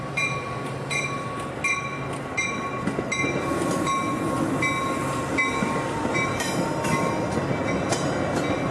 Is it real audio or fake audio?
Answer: real